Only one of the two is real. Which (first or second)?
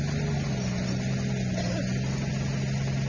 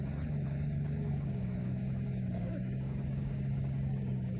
first